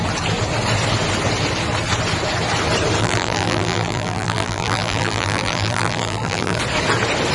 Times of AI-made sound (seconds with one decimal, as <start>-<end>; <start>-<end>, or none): 3.0-6.6

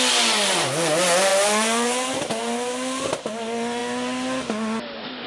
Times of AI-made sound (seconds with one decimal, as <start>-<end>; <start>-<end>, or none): none

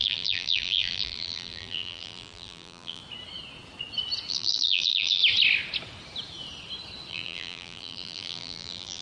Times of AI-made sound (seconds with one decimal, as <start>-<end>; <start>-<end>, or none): 0.0-3.0; 4.3-5.2; 7.1-9.0